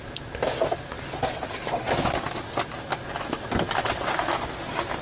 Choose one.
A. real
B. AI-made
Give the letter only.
A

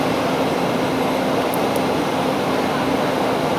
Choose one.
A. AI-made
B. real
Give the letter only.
B